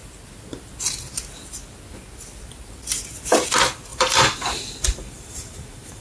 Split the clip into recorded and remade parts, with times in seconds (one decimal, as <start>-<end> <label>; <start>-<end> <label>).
0.0-3.9 recorded; 3.9-6.0 remade